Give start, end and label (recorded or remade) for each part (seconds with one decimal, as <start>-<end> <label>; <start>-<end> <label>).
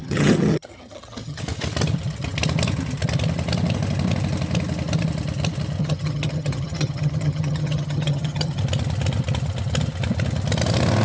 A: 0.0-1.4 remade; 1.4-5.8 recorded; 5.8-8.6 remade; 8.6-11.0 recorded